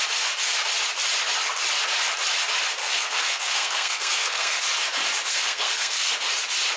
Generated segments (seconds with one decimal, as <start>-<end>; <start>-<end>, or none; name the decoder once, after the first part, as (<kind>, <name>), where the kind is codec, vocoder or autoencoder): 2.8-4.6 (codec, SNAC); 5.3-6.1